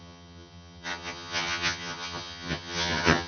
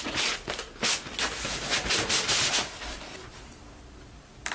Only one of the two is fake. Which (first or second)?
first